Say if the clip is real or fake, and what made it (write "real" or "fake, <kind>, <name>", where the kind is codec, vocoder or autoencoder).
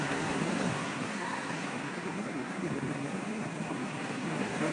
fake, codec, SNAC